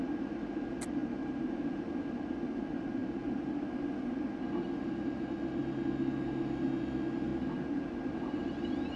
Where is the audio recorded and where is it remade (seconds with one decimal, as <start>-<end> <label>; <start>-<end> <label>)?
0.0-9.0 recorded